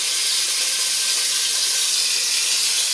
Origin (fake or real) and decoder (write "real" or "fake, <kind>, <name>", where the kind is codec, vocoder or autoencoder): real